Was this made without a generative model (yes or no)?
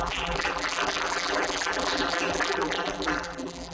no